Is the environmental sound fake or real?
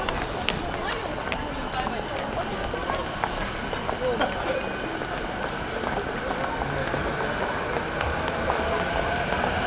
real